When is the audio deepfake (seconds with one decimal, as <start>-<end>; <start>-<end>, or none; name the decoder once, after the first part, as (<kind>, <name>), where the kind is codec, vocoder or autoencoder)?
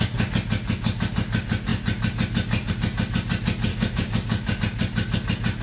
3.7-4.6 (codec, DAC)